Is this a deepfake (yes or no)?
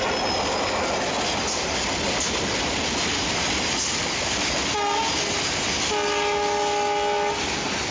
no